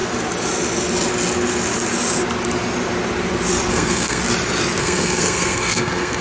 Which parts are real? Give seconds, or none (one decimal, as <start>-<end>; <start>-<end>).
0.0-3.7; 4.2-4.8

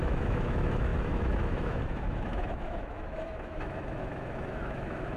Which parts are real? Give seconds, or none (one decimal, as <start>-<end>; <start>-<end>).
none